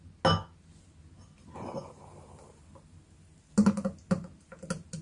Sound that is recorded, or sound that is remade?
recorded